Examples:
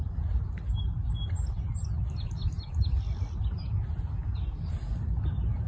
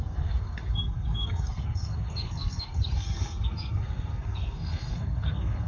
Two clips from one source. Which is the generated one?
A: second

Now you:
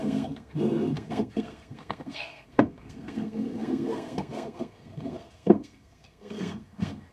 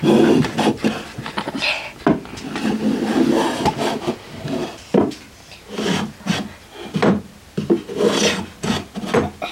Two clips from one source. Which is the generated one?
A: first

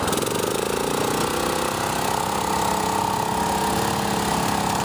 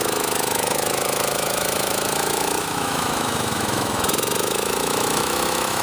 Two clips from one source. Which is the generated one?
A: second